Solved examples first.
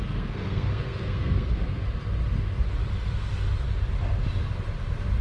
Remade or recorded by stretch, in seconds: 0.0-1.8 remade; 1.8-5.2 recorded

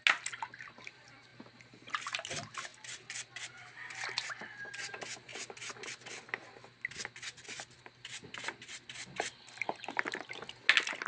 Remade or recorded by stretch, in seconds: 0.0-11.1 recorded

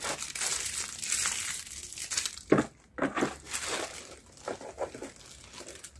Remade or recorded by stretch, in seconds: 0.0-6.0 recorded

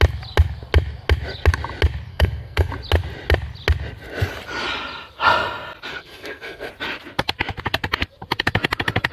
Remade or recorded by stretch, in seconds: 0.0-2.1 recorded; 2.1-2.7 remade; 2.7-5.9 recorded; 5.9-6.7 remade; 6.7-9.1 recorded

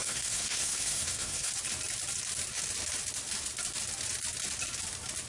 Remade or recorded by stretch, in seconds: 0.0-1.5 remade; 1.5-5.3 recorded

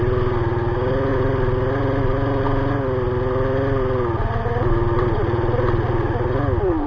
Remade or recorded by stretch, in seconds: 0.0-6.9 recorded

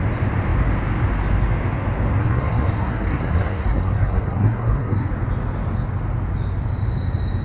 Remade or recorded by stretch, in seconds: 0.0-2.2 recorded; 2.2-5.1 remade; 5.1-7.4 recorded

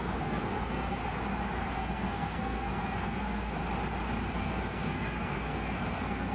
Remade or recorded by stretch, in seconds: 0.0-1.0 remade; 1.0-1.7 recorded; 1.7-3.6 remade; 3.6-4.3 recorded; 4.3-6.3 remade